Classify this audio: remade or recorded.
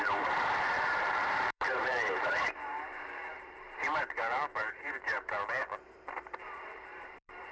remade